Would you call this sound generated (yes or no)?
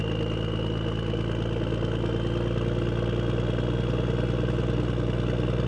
no